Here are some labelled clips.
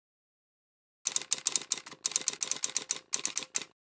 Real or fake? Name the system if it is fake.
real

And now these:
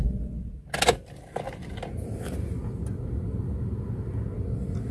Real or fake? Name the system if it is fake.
real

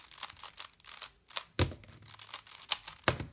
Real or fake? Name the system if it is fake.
real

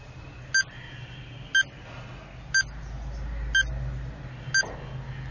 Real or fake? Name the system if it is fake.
real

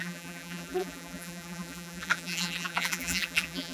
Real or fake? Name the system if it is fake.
fake, vocoder, BigVGAN v2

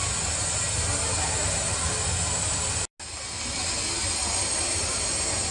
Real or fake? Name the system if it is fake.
real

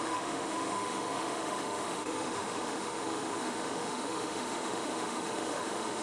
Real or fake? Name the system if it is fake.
fake, autoencoder, DAC-VAE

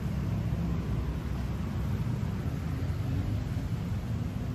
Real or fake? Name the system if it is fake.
real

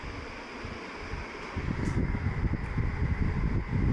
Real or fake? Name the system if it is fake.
real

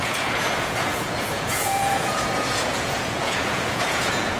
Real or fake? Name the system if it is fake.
fake, vocoder, Vocos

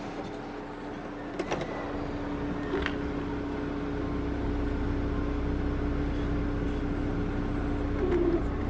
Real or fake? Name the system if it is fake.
real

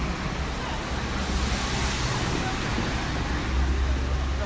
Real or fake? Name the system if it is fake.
real